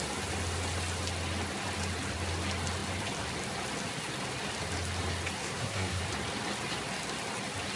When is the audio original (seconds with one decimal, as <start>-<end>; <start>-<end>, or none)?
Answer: 0.0-5.4; 6.0-7.8